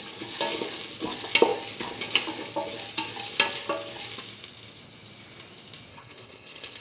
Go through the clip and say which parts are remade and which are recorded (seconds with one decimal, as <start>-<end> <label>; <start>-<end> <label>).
0.0-5.9 recorded; 5.9-6.8 remade